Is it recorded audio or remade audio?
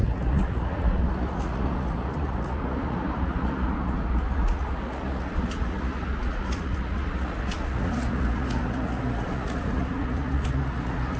remade